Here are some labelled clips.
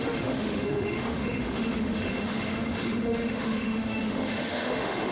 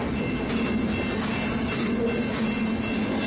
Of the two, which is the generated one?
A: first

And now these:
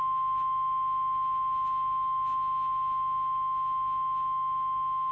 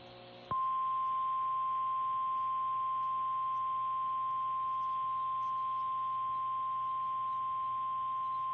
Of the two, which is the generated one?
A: first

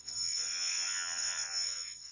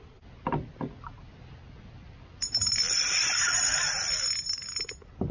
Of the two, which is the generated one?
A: first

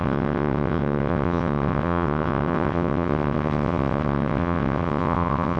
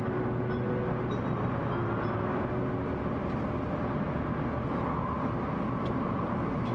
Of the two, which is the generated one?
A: first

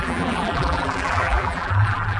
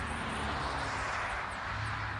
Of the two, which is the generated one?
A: first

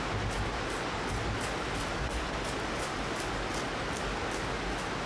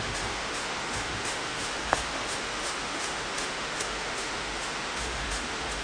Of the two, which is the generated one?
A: second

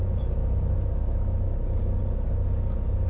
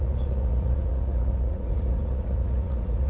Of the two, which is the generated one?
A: second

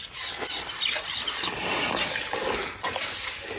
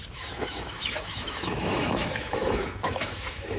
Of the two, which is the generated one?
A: second